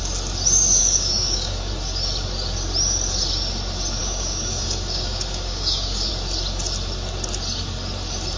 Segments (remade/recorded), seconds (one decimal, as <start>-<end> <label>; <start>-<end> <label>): 0.0-0.8 recorded; 0.8-1.7 remade; 1.7-4.0 recorded; 4.0-6.1 remade; 6.1-8.4 recorded